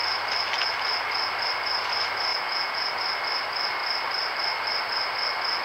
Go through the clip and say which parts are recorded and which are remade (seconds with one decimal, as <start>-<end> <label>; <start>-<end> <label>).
0.0-2.3 recorded; 2.3-2.9 remade; 2.9-5.6 recorded